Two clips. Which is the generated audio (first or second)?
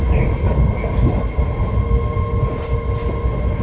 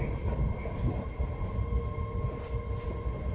second